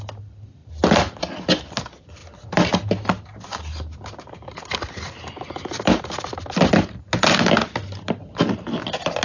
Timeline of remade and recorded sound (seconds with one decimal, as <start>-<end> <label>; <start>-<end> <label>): 0.0-9.2 recorded